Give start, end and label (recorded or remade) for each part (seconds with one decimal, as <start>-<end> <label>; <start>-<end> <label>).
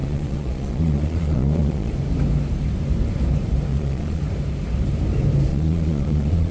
0.0-1.9 remade; 1.9-3.7 recorded; 3.7-4.2 remade; 4.2-5.5 recorded; 5.5-6.5 remade